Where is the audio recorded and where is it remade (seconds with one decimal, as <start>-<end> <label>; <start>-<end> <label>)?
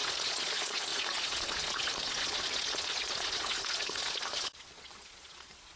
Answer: 0.0-5.8 remade